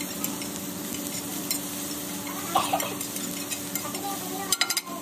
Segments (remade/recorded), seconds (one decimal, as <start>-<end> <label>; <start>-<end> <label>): 0.0-5.0 recorded